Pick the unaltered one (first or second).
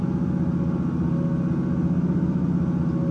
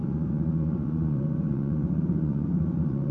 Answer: first